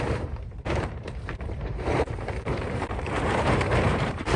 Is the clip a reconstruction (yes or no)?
yes